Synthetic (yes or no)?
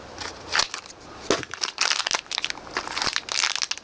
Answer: no